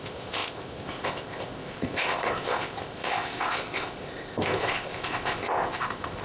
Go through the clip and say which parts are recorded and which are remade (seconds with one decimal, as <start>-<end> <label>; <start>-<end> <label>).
0.0-6.2 remade